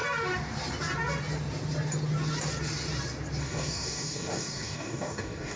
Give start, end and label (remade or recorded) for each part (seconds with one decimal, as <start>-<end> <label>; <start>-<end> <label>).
0.0-3.4 recorded; 3.4-5.6 remade